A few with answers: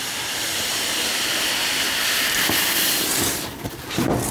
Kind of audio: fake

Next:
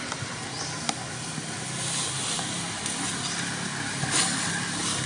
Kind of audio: real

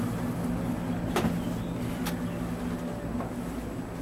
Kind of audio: real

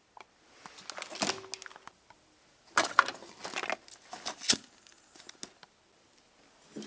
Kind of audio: real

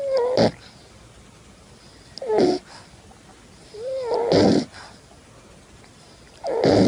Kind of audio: real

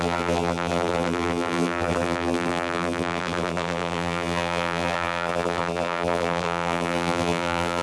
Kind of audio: fake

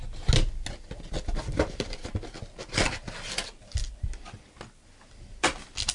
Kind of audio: real